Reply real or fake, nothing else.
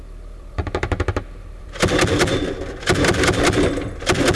fake